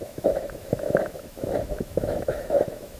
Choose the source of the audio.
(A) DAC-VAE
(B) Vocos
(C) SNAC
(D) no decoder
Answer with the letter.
A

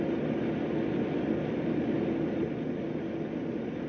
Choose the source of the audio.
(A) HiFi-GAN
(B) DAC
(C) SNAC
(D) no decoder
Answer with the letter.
D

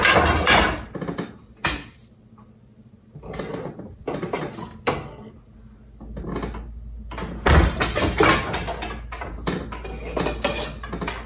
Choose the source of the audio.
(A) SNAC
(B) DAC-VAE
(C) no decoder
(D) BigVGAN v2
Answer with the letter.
C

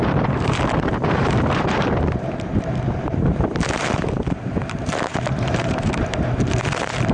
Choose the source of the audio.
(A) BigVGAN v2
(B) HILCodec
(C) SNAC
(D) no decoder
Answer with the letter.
A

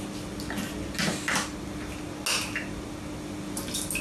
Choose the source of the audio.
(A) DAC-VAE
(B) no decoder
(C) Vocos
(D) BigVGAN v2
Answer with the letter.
B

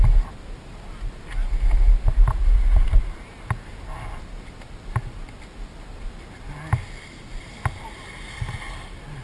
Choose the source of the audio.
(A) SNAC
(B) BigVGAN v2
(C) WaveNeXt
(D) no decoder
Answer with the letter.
D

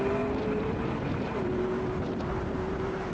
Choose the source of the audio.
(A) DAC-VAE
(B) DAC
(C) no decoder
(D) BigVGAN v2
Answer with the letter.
D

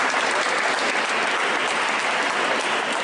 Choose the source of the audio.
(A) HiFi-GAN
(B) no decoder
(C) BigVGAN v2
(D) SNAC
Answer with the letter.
B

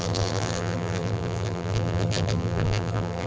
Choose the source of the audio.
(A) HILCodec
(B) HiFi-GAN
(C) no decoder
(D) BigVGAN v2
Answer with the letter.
D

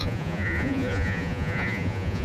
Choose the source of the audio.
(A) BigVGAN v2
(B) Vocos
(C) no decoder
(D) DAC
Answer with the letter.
B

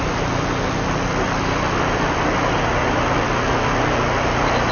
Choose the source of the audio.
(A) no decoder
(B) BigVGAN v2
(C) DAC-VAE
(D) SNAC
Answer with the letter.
A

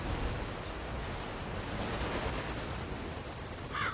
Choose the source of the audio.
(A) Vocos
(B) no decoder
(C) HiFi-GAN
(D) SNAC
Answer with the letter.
B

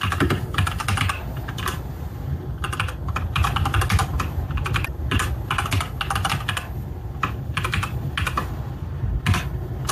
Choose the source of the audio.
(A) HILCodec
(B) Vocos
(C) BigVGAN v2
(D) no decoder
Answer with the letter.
D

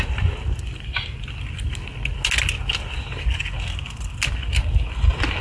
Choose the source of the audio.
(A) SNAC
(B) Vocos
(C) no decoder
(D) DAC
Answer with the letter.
C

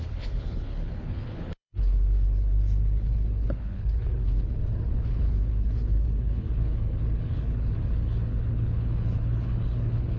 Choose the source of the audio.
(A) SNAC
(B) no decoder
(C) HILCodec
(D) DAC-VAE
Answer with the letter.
C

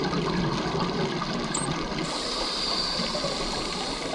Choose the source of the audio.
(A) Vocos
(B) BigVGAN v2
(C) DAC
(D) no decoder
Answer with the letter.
D